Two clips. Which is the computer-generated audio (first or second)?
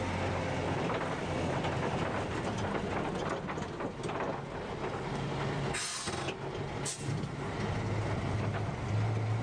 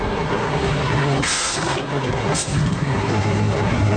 second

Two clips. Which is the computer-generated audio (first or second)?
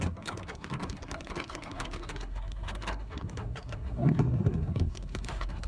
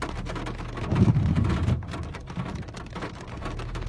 first